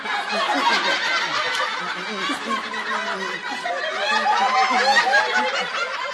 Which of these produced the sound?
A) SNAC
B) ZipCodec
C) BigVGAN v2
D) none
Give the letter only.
D